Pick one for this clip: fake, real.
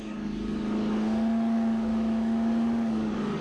fake